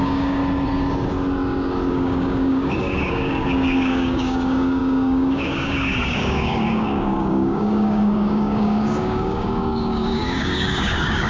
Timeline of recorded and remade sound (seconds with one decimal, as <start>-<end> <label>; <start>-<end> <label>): 0.0-0.4 remade; 0.4-1.9 recorded; 1.9-11.3 remade